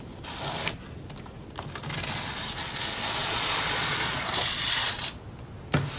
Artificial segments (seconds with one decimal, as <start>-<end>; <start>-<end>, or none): 3.2-5.0